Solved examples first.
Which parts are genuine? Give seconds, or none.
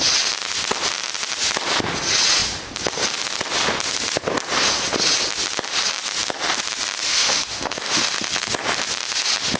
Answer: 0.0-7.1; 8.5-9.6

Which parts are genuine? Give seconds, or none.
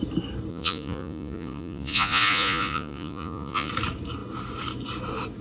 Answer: 0.0-0.5; 3.7-5.4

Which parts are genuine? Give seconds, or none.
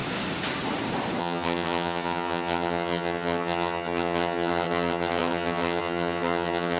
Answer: 0.0-1.2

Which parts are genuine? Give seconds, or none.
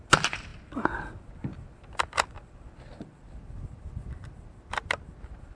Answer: 0.0-5.6